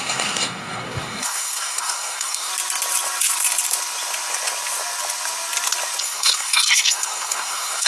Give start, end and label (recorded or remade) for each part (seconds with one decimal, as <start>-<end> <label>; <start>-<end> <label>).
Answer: 0.0-2.5 remade; 2.5-6.0 recorded; 6.0-7.9 remade